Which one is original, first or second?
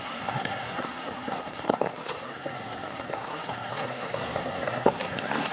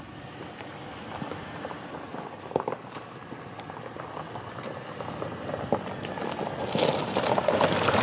second